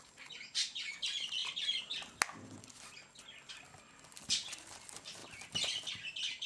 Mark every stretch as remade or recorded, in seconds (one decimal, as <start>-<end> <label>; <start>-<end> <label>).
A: 0.0-6.5 recorded